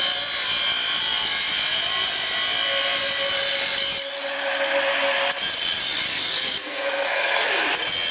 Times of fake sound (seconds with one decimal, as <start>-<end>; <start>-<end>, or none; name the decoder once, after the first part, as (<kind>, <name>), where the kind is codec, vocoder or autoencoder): 6.1-7.6 (codec, SNAC)